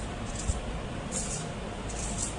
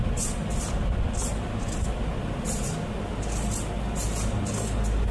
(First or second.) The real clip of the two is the second